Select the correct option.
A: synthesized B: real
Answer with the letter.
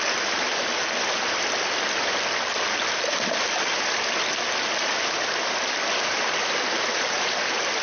B